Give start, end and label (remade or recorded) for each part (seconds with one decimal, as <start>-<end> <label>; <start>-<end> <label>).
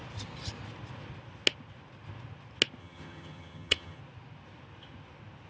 0.0-2.8 recorded; 2.8-4.0 remade; 4.0-5.5 recorded